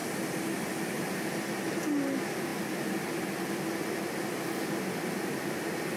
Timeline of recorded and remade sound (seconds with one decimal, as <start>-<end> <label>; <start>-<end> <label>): 0.0-6.0 recorded